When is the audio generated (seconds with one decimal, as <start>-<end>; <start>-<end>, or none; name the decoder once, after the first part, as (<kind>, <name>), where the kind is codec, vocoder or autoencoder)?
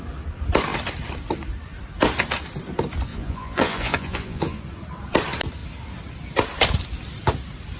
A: 3.1-4.6 (vocoder, Vocos)